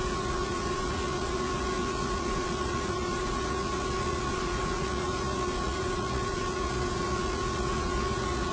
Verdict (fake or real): fake